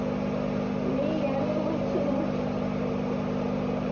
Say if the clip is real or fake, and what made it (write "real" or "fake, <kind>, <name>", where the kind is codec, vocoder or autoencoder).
real